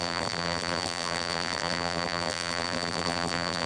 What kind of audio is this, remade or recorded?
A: remade